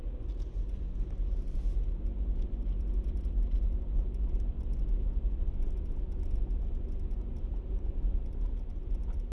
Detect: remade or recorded recorded